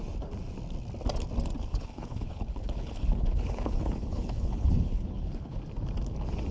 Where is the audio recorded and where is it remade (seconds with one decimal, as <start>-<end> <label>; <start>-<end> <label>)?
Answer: 0.0-1.7 recorded; 1.7-5.6 remade; 5.6-6.5 recorded